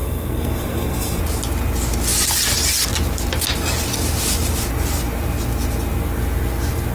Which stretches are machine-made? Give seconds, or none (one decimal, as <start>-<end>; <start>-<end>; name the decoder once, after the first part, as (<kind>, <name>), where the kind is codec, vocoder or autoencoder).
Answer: 0.0-1.2 (codec, SNAC)